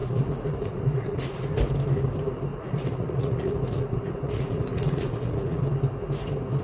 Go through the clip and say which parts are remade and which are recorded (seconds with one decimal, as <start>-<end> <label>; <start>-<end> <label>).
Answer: 0.0-1.5 remade; 1.5-2.5 recorded; 2.5-5.6 remade; 5.6-6.6 recorded